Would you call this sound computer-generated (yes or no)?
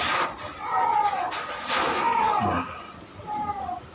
no